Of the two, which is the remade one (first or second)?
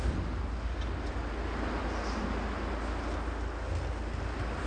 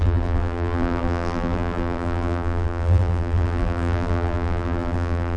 second